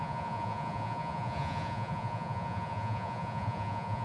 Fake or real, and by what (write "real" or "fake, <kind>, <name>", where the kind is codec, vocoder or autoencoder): fake, vocoder, Vocos